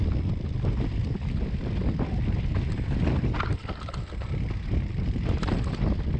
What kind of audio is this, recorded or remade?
recorded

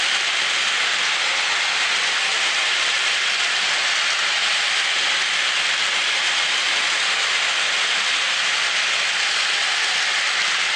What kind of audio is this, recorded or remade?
recorded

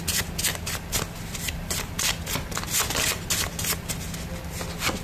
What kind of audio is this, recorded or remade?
recorded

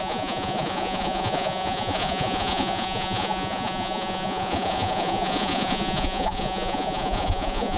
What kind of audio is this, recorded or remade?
remade